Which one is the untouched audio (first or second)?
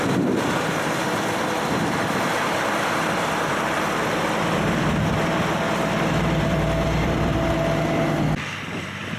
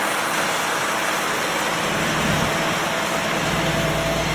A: second